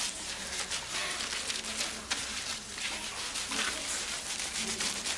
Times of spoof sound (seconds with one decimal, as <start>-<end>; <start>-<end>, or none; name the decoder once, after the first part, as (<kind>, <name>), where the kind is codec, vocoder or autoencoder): none